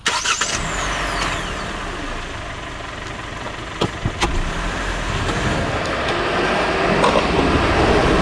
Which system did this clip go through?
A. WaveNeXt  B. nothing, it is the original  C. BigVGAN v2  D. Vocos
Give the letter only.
B